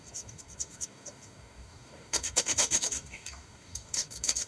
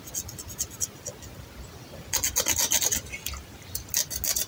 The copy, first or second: first